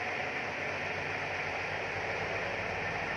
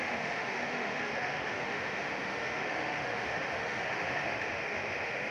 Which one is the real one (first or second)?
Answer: first